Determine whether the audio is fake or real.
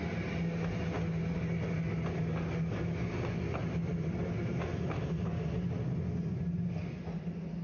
real